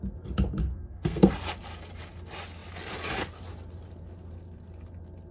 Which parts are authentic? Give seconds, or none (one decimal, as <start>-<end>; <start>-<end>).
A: 0.0-0.6; 1.3-5.3

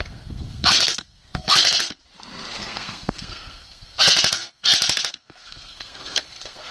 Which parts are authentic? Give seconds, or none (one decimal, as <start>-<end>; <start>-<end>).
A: 2.0-2.6